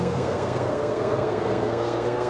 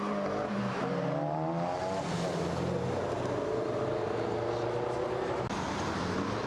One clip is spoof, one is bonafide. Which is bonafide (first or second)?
second